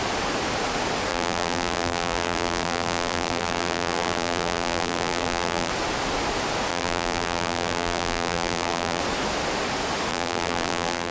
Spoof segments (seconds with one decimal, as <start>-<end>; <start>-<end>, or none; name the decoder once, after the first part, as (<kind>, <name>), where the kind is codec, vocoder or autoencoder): 1.1-5.7 (vocoder, BigVGAN v2); 6.7-9.0; 10.1-11.1